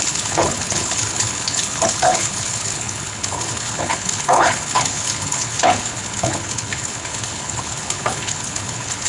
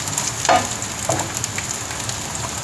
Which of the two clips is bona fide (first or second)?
second